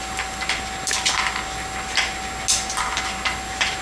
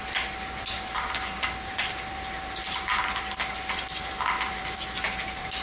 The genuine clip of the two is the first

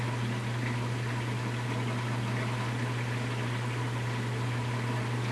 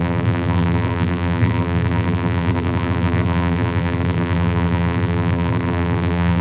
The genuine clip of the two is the first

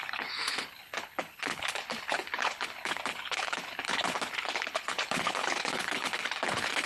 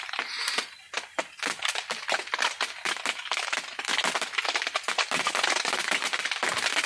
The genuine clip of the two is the second